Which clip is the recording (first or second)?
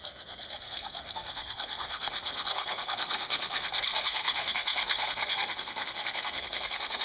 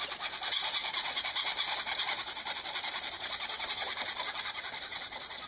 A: second